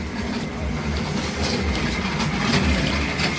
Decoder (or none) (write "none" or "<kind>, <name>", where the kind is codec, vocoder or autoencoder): none